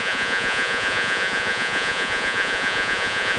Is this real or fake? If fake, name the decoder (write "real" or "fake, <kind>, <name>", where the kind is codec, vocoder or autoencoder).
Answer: fake, vocoder, Vocos